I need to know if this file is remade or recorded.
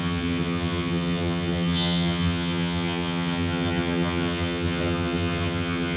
remade